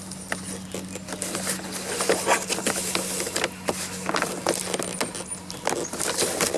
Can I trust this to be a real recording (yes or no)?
yes